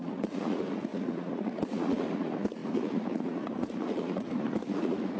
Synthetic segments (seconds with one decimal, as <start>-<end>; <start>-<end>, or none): 0.0-5.2